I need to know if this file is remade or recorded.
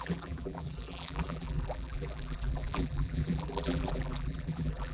remade